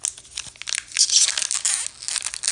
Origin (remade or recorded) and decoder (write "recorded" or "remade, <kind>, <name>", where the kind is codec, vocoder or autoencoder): recorded